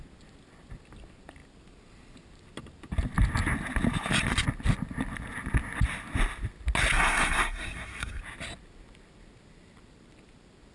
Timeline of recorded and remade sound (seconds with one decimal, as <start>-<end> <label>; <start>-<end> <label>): 0.0-6.9 recorded; 6.9-8.2 remade; 8.2-10.7 recorded